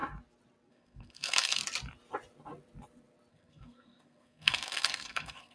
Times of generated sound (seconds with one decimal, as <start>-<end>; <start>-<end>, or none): 0.7-1.6; 3.3-5.5